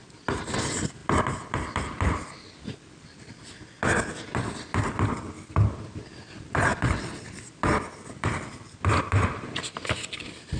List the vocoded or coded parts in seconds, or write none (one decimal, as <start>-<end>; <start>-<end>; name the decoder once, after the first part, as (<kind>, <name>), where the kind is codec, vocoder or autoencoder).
1.0-2.3 (vocoder, BigVGAN v2); 6.7-8.9